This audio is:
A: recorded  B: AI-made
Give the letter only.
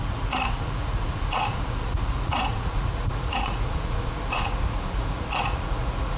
B